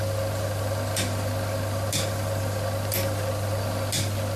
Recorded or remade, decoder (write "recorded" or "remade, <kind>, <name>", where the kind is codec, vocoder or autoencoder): recorded